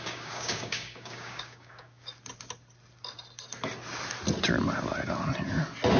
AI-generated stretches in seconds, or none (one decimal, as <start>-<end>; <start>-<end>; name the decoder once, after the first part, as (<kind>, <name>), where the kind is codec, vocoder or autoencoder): 0.0-2.1 (codec, DAC)